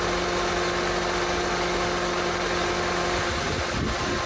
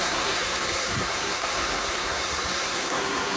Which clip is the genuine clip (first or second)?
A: first